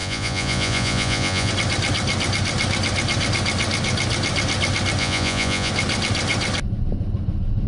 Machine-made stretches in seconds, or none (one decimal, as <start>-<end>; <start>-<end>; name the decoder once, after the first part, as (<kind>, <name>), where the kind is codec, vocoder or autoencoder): 0.0-1.5 (vocoder, Vocos); 5.0-5.7